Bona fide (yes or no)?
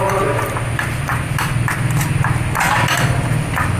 yes